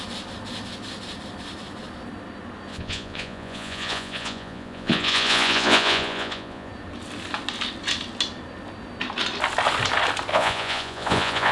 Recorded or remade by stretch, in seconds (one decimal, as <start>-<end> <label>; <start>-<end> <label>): 0.0-2.7 recorded; 2.7-6.7 remade; 6.7-10.3 recorded; 10.3-11.5 remade